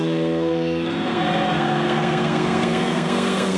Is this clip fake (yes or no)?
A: yes